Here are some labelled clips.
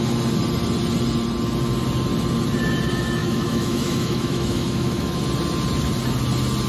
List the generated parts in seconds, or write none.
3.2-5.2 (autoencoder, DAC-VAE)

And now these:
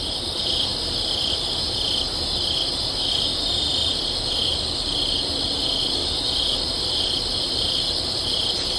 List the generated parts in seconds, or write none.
none

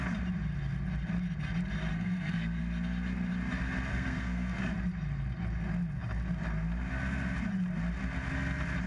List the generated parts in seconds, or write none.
1.9-2.6 (codec, SNAC); 3.9-4.7

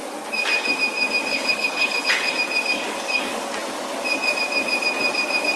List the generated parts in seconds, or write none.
1.3-2.3 (codec, HILCodec)

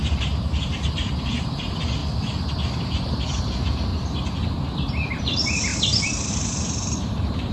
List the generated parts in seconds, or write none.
0.0-2.0 (vocoder, BigVGAN v2); 3.4-3.9; 4.9-5.7; 6.3-7.5

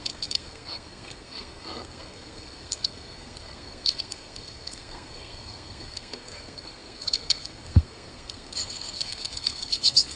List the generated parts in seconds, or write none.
0.0-10.2 (codec, SNAC)

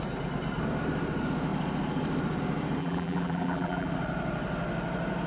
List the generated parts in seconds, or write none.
2.8-3.9 (vocoder, BigVGAN v2)